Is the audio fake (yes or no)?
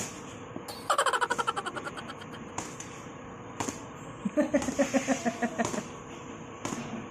no